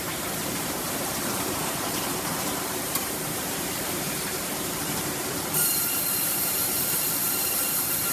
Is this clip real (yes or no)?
no